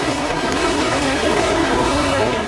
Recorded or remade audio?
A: remade